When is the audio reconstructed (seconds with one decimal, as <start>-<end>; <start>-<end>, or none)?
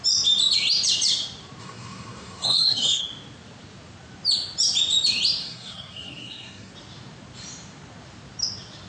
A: 1.6-3.0; 5.4-6.7